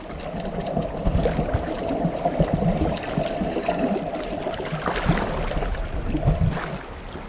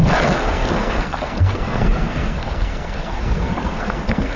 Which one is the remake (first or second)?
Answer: second